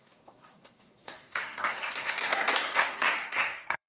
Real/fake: fake